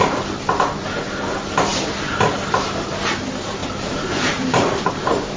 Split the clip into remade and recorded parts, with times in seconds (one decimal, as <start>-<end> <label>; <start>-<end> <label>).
0.0-3.6 recorded; 3.6-4.9 remade; 4.9-5.4 recorded